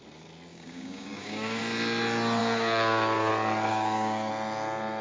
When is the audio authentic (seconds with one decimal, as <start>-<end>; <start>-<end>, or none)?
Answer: 0.0-0.5; 1.6-2.4; 3.3-3.7; 4.3-5.0